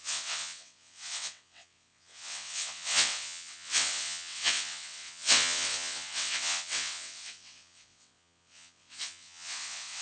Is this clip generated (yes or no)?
yes